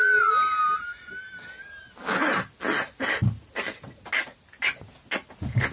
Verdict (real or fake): real